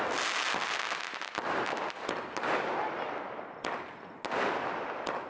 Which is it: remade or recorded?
recorded